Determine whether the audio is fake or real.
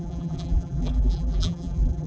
fake